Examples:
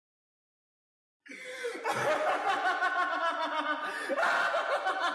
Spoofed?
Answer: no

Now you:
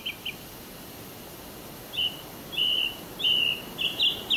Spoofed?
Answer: no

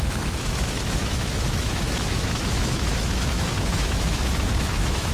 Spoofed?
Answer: yes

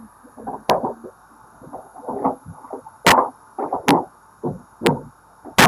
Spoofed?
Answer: no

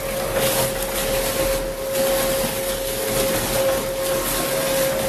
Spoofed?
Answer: no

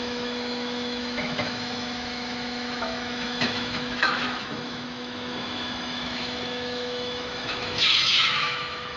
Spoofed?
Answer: yes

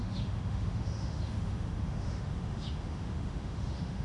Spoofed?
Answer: yes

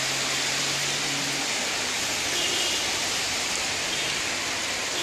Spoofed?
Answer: no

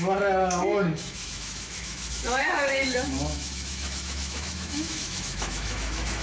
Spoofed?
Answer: yes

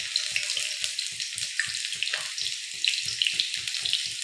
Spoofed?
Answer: no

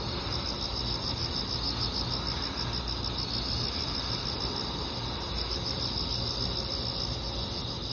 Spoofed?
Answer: no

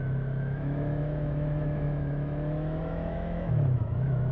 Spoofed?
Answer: yes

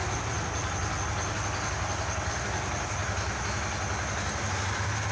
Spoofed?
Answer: no